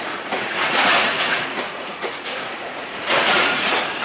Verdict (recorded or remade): remade